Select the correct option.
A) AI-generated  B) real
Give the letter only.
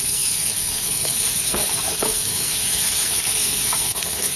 A